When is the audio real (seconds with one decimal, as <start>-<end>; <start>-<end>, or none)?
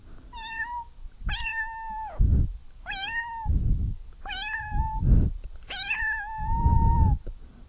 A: 1.5-4.6